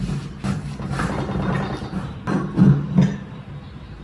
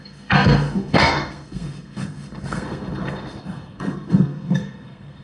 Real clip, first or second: first